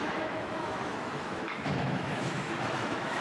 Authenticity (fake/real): fake